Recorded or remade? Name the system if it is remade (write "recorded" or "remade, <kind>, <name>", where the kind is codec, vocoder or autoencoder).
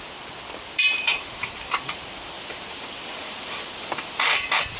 remade, vocoder, BigVGAN v2